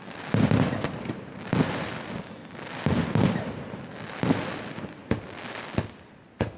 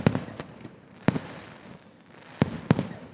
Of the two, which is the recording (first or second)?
first